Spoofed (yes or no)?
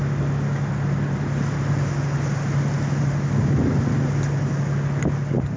no